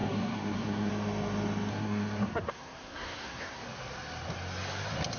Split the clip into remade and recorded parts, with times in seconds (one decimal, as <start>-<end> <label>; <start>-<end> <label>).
0.0-0.9 remade; 0.9-1.7 recorded; 1.7-3.6 remade; 3.6-5.2 recorded